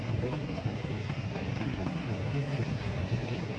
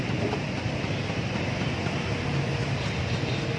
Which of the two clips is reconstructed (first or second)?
first